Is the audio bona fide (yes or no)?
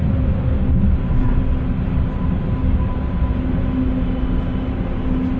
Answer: yes